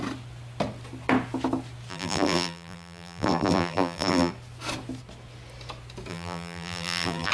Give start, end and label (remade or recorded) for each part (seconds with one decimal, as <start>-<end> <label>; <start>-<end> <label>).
0.0-1.9 recorded; 1.9-4.3 remade; 4.3-6.1 recorded; 6.1-7.3 remade